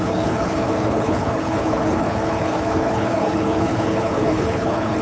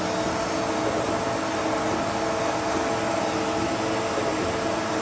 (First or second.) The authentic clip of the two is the second